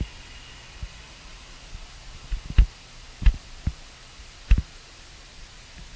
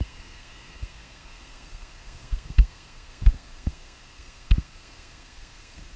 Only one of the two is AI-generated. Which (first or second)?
second